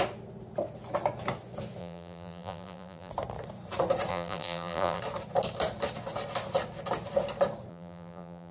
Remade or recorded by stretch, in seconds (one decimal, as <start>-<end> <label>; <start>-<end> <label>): 0.0-1.8 recorded; 1.8-3.1 remade; 3.1-4.1 recorded; 4.1-5.0 remade; 5.0-7.7 recorded; 7.7-8.5 remade